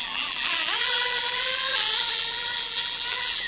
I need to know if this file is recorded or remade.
remade